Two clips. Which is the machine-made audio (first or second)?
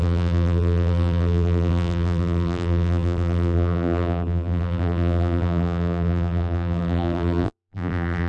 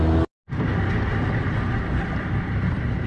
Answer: first